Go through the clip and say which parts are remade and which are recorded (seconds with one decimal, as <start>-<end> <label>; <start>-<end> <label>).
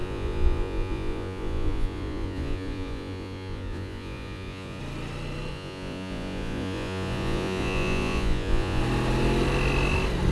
0.0-4.8 remade; 4.8-5.5 recorded; 5.5-8.8 remade; 8.8-10.3 recorded